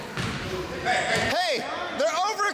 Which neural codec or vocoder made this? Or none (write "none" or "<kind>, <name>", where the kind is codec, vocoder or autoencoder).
none